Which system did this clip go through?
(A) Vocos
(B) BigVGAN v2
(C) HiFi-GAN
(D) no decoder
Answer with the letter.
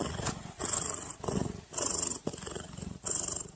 A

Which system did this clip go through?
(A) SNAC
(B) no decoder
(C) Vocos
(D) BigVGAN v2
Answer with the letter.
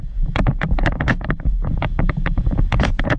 C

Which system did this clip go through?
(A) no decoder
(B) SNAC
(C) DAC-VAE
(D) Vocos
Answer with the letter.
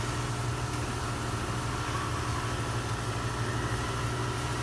A